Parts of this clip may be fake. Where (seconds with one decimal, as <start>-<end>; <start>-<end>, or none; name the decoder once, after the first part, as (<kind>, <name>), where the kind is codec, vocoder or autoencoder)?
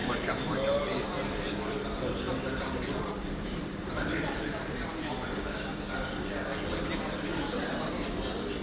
0.0-5.0 (vocoder, BigVGAN v2); 7.3-8.1